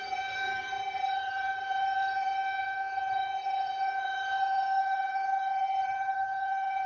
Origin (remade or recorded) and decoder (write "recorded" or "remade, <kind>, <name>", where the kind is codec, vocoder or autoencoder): remade, vocoder, HiFi-GAN